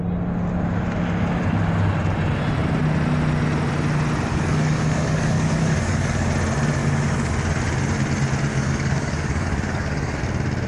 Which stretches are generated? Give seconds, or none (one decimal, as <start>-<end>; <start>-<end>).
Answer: 4.3-6.3; 6.8-7.3; 8.5-10.2

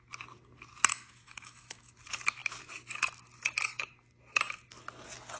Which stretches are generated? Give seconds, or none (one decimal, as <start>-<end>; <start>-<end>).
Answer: 0.9-1.9

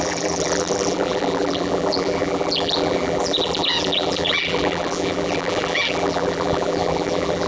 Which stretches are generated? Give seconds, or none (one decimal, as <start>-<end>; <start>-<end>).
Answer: 0.0-7.5

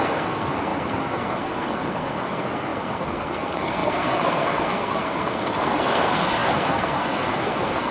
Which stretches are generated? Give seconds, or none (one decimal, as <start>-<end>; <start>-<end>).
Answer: 0.0-7.9

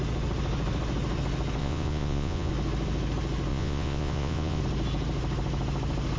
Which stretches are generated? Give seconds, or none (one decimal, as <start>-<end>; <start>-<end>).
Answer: 1.6-2.5; 3.5-4.6

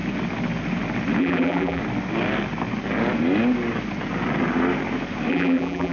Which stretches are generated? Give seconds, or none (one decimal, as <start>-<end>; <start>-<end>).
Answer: 1.2-1.8; 5.3-5.9

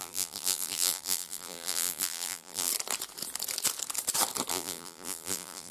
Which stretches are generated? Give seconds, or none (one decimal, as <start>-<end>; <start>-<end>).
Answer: 0.0-2.7; 4.5-5.7